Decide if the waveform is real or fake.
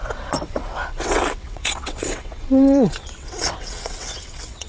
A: fake